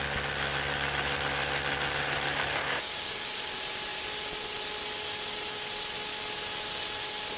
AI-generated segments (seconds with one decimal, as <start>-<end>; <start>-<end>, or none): 2.6-3.5